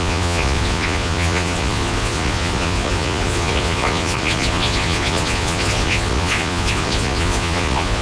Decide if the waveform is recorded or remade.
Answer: remade